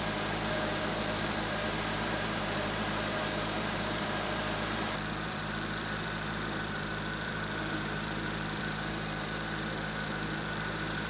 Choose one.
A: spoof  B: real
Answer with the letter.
A